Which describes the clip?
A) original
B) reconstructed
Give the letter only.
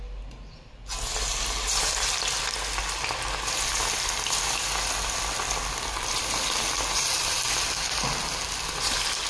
A